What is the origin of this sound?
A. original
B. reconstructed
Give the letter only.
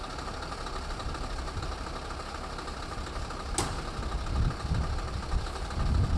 A